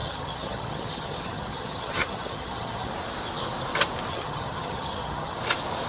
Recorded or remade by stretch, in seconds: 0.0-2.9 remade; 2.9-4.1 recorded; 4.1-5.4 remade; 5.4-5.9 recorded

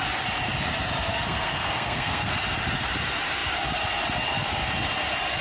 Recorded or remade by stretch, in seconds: 0.0-1.1 recorded; 1.1-2.3 remade; 2.3-5.4 recorded

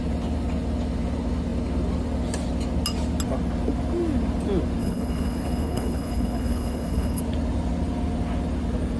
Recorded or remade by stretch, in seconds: 0.0-4.8 recorded; 4.8-7.2 remade; 7.2-9.0 recorded

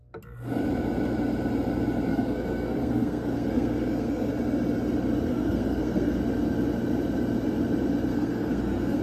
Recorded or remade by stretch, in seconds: 0.0-2.1 recorded; 2.1-4.3 remade; 4.3-5.3 recorded; 5.3-6.2 remade; 6.2-8.1 recorded; 8.1-9.0 remade

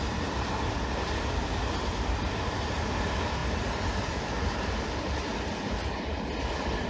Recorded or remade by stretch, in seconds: 0.0-6.9 recorded

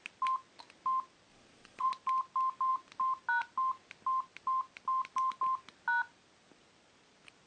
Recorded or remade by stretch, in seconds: 0.0-1.3 recorded; 1.3-1.9 remade; 1.9-7.5 recorded